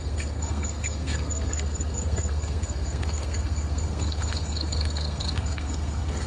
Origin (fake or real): fake